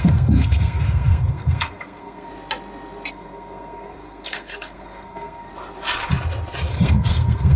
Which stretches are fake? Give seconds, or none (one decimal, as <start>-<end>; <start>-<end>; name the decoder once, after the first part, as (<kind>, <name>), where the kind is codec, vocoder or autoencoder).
0.0-2.3 (codec, SNAC); 3.1-5.5; 6.7-7.6